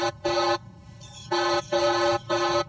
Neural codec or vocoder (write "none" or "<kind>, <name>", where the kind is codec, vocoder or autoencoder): codec, HILCodec